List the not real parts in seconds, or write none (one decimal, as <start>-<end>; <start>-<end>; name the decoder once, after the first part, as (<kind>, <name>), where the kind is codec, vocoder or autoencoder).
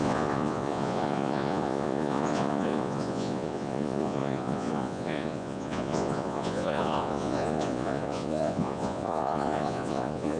0.0-10.4 (vocoder, Vocos)